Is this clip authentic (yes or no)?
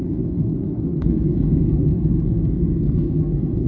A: no